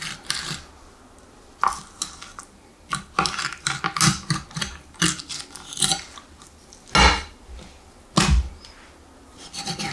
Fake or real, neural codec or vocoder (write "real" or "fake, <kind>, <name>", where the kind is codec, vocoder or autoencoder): real